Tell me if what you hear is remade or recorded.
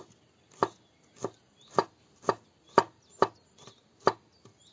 recorded